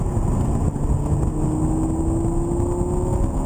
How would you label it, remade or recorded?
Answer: recorded